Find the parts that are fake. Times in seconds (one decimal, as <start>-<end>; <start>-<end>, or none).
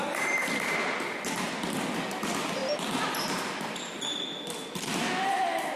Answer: none